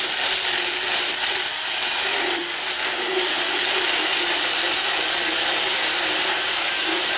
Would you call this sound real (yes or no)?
no